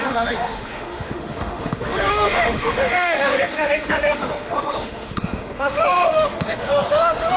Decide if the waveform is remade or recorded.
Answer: remade